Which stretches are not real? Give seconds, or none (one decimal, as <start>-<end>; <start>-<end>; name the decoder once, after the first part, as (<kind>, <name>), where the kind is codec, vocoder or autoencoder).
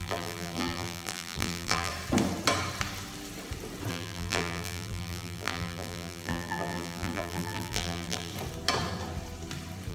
0.0-1.9 (vocoder, BigVGAN v2); 3.9-8.3